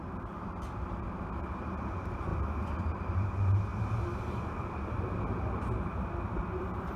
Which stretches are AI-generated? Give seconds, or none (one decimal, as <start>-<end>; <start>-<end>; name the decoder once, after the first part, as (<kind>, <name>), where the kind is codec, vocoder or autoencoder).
0.0-2.3 (vocoder, BigVGAN v2); 2.8-7.0

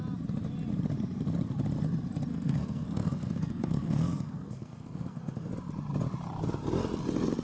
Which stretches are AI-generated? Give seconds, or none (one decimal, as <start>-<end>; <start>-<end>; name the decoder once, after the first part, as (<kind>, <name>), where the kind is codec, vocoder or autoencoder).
2.3-5.5 (codec, SNAC)